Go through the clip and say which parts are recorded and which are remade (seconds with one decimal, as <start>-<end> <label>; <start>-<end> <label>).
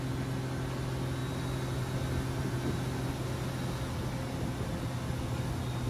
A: 0.0-5.9 recorded